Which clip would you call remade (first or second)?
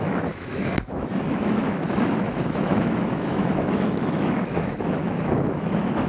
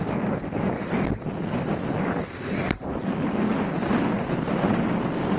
first